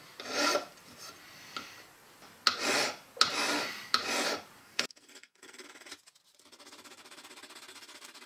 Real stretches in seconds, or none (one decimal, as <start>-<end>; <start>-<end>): 0.0-4.6; 5.9-8.3